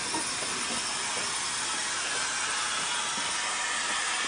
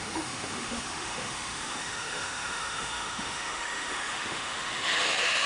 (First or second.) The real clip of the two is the first